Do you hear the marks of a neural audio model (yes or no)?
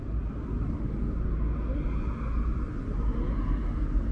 no